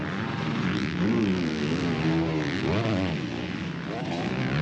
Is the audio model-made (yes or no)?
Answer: no